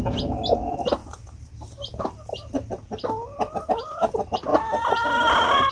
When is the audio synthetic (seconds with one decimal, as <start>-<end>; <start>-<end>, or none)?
1.0-1.5; 4.5-5.7